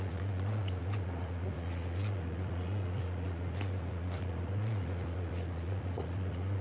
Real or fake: fake